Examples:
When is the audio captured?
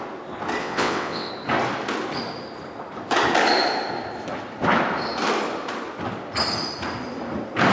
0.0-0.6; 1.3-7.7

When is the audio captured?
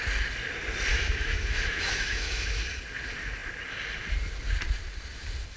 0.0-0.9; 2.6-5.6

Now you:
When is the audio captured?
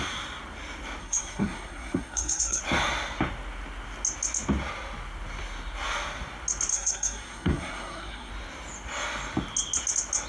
0.0-1.0; 2.6-6.7; 8.3-10.3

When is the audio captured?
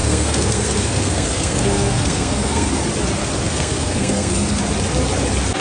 2.8-3.2; 4.6-5.6